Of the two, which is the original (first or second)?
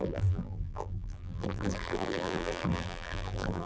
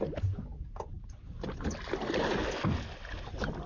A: second